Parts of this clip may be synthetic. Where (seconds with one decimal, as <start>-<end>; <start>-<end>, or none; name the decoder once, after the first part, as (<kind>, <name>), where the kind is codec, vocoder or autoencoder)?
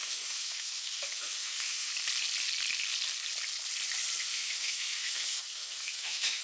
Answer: 0.0-1.9 (autoencoder, DAC-VAE); 4.2-6.4